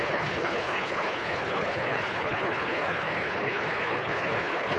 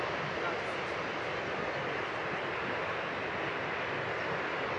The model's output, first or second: first